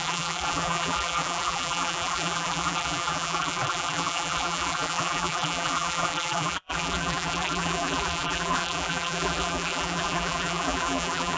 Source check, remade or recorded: remade